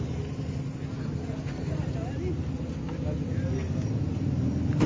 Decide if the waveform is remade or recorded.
recorded